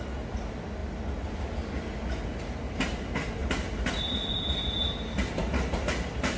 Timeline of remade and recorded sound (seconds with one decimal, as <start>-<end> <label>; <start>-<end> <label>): 0.0-6.4 recorded